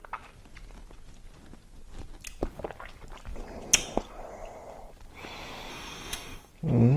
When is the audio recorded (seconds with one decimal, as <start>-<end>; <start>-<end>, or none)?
0.0-5.7; 6.5-7.0